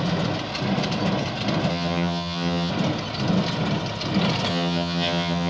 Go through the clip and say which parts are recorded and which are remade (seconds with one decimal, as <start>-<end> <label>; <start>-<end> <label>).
0.0-1.7 recorded; 1.7-2.7 remade; 2.7-4.5 recorded; 4.5-5.5 remade